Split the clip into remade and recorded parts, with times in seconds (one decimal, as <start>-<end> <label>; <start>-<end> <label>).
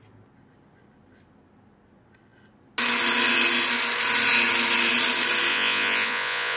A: 0.0-5.5 recorded; 5.5-6.6 remade